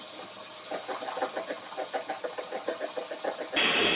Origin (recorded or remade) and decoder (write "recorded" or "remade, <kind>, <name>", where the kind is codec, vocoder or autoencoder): recorded